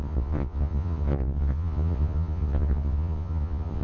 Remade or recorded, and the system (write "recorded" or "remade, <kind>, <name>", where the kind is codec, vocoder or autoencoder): remade, vocoder, Vocos